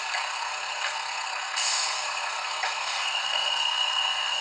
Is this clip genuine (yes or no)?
no